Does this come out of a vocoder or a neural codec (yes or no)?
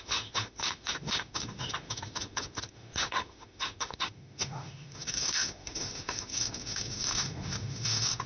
yes